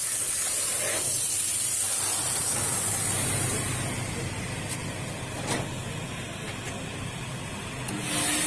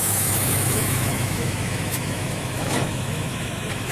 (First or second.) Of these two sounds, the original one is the first